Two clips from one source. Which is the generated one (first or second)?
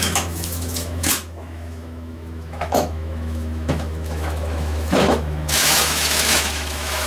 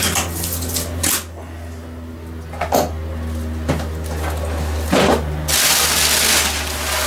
first